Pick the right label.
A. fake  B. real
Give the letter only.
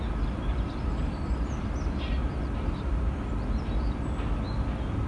B